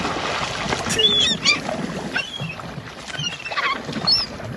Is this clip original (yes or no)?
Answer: yes